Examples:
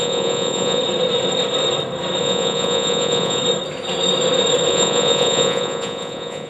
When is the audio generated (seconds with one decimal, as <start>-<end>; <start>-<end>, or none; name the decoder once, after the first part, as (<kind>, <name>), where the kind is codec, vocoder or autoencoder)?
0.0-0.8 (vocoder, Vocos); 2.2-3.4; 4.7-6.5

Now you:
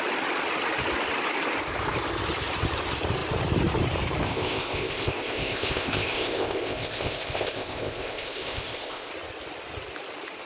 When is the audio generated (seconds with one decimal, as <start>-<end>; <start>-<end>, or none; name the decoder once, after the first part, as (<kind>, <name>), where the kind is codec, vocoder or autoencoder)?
4.2-9.1 (codec, ZipCodec)

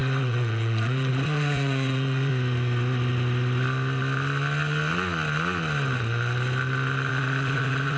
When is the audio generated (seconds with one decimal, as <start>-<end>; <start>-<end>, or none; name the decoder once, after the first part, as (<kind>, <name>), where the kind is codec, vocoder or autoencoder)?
0.0-2.3 (vocoder, Vocos); 7.1-8.0

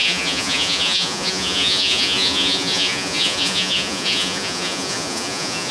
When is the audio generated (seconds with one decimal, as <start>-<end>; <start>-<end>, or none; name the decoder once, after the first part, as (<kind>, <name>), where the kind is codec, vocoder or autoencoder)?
0.0-5.7 (vocoder, Vocos)

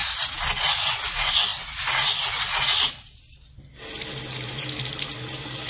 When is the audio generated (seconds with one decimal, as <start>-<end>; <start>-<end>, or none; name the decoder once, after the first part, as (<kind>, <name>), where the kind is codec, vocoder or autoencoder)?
none